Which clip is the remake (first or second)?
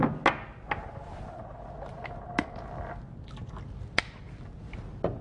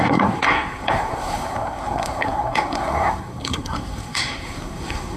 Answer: second